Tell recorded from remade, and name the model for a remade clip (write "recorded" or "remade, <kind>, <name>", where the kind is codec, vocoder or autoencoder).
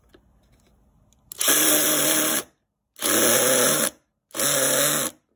recorded